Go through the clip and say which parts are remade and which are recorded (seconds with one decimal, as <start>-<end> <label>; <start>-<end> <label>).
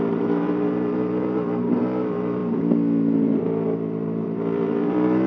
0.0-2.4 remade; 2.4-3.4 recorded; 3.4-5.3 remade